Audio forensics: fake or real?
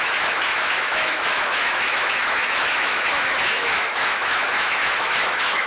fake